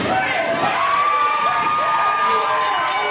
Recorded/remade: recorded